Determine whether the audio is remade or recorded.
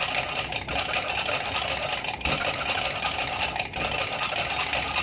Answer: recorded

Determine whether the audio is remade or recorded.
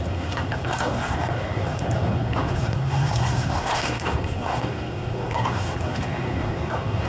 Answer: remade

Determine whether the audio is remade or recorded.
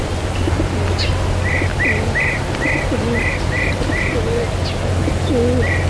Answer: recorded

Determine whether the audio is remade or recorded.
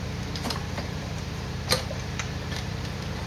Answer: remade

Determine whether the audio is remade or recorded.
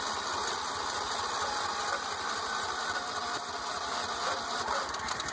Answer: recorded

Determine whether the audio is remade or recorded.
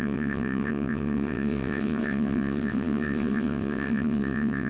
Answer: remade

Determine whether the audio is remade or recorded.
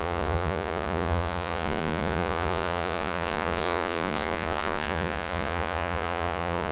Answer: remade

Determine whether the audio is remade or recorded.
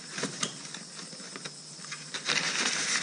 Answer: recorded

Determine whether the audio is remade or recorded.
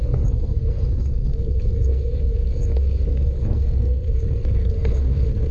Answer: remade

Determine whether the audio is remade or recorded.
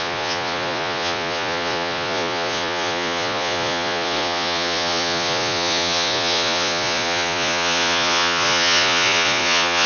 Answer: remade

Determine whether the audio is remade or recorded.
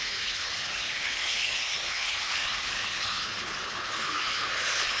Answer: remade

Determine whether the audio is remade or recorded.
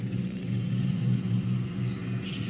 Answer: remade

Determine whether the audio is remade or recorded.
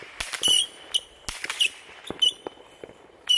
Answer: recorded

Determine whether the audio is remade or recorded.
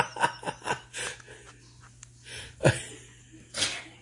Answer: recorded